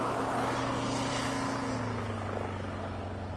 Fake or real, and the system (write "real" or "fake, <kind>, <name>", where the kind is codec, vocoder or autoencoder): real